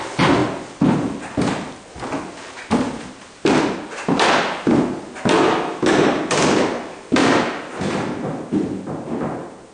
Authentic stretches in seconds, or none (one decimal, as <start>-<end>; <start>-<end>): 0.0-9.7